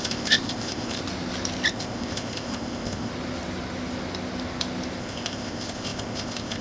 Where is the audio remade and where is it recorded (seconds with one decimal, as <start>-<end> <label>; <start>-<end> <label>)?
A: 0.0-1.0 remade; 1.0-1.7 recorded; 1.7-3.1 remade; 3.1-5.0 recorded; 5.0-6.6 remade